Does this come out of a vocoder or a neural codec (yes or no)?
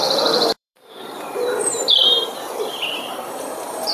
yes